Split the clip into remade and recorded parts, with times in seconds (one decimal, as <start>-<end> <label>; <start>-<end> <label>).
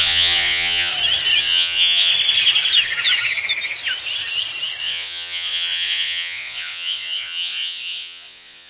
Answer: 0.0-0.9 remade; 0.9-1.4 recorded; 1.4-2.1 remade; 2.1-4.8 recorded; 4.8-8.7 remade